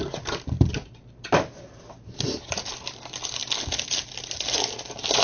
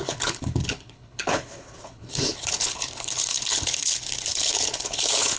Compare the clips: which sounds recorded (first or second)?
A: first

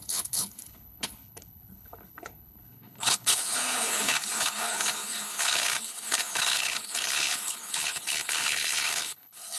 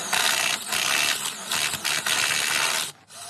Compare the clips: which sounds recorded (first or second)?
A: second